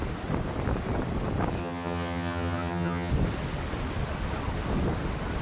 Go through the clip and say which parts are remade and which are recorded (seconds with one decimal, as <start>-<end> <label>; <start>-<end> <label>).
0.0-1.6 recorded; 1.6-3.1 remade; 3.1-5.4 recorded

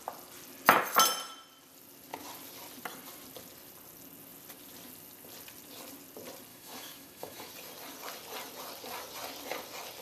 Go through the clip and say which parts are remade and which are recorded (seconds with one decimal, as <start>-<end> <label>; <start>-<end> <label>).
0.0-6.5 recorded; 6.5-7.5 remade; 7.5-10.0 recorded

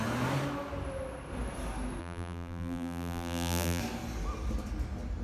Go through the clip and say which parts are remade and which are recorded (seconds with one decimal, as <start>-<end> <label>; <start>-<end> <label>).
0.0-2.0 recorded; 2.0-3.8 remade; 3.8-5.2 recorded

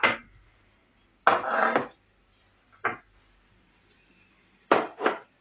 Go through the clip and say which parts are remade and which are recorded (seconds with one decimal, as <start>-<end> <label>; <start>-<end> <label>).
0.0-0.8 remade; 0.8-3.5 recorded; 3.5-5.4 remade

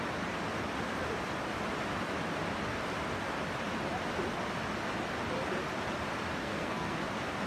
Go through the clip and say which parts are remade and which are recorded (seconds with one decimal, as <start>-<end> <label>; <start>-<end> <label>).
0.0-6.4 recorded; 6.4-7.0 remade; 7.0-7.5 recorded